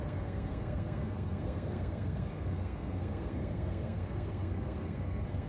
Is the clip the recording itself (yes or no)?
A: no